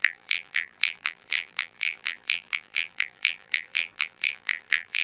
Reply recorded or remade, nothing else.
remade